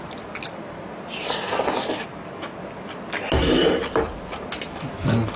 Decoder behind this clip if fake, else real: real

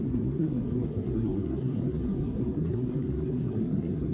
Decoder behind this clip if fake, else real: fake, codec, SNAC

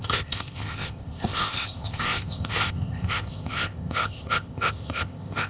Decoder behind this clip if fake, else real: fake, codec, ZipCodec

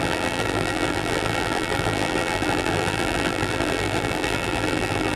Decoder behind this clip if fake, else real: fake, vocoder, BigVGAN v2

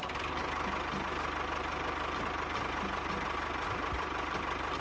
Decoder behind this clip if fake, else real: real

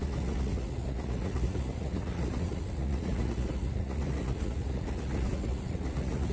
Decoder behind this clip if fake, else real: fake, vocoder, Vocos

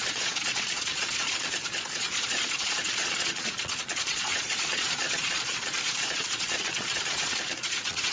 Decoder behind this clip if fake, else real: fake, vocoder, Vocos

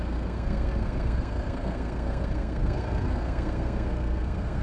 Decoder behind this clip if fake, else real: fake, codec, SNAC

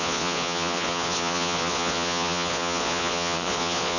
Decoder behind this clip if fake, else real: fake, vocoder, Vocos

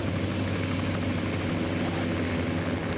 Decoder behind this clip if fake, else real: real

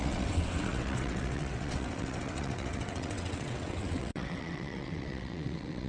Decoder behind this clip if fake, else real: fake, vocoder, WaveNeXt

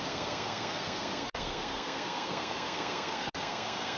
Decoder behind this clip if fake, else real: fake, codec, SNAC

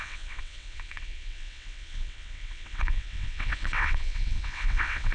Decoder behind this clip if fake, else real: fake, vocoder, WaveNeXt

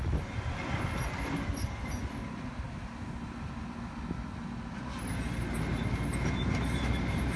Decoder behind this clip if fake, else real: real